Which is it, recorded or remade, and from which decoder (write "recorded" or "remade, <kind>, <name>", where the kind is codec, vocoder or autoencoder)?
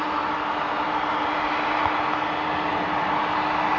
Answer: recorded